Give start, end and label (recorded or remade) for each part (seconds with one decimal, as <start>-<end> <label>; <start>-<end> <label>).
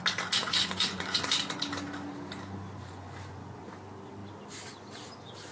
0.0-0.4 recorded; 0.4-1.6 remade; 1.6-2.8 recorded; 2.8-3.6 remade; 3.6-5.5 recorded